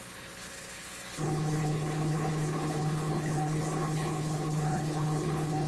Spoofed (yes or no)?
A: yes